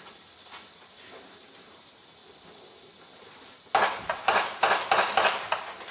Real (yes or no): yes